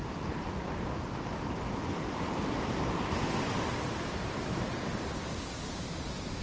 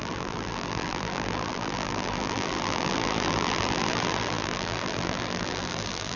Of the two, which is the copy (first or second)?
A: second